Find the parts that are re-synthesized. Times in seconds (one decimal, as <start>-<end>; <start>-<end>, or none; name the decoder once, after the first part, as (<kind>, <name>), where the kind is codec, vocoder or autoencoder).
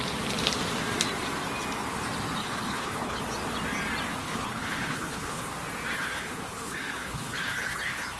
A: 2.4-3.2 (codec, HILCodec); 4.2-5.5; 5.9-8.2